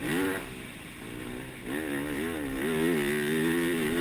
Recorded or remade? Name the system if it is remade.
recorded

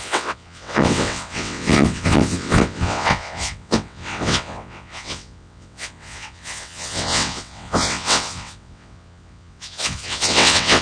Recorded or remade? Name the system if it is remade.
remade, vocoder, WaveNeXt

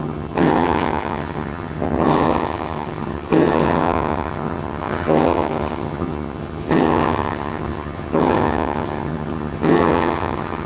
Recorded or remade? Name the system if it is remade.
remade, vocoder, HiFi-GAN